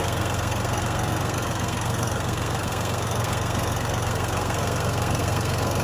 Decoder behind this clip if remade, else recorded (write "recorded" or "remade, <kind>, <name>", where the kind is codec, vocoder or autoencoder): remade, codec, SNAC